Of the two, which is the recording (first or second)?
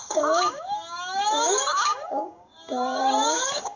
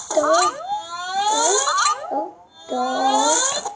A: second